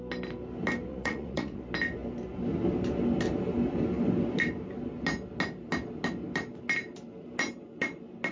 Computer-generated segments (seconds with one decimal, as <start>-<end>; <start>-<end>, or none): 0.9-1.6